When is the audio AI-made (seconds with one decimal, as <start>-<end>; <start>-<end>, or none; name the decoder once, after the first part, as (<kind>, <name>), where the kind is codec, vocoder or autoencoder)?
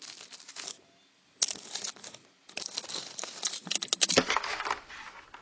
none